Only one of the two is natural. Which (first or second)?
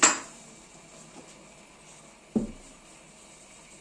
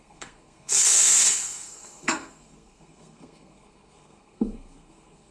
first